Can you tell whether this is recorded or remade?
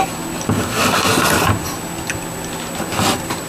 recorded